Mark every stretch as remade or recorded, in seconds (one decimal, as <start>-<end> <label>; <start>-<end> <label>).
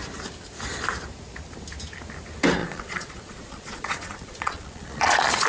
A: 0.0-2.6 recorded; 2.6-5.5 remade